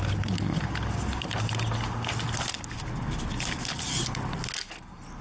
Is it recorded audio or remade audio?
recorded